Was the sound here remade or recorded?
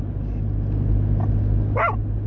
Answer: recorded